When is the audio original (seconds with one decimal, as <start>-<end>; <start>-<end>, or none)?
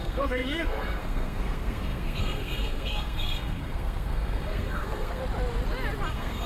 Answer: 5.2-6.1